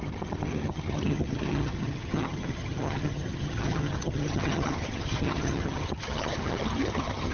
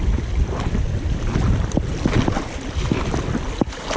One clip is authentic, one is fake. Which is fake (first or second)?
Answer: first